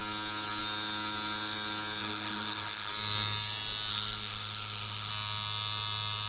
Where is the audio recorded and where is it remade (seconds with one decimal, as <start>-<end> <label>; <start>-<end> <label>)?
0.0-2.0 recorded; 2.0-2.9 remade; 2.9-3.9 recorded; 3.9-5.1 remade; 5.1-6.3 recorded